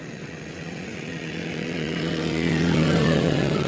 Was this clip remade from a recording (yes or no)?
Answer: yes